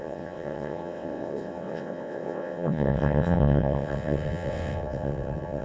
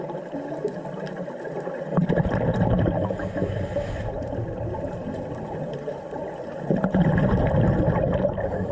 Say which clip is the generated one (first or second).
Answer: first